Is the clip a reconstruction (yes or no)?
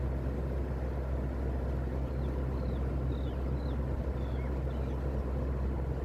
no